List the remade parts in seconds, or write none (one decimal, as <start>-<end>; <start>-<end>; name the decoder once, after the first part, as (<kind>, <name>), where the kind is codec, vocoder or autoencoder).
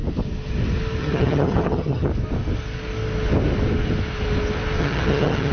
1.0-2.1 (vocoder, HiFi-GAN); 4.8-5.5